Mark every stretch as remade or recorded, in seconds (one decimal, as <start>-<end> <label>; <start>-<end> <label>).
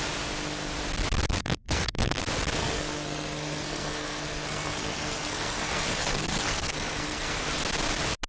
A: 0.0-1.4 recorded; 1.4-2.2 remade; 2.2-2.6 recorded; 2.6-7.6 remade; 7.6-8.3 recorded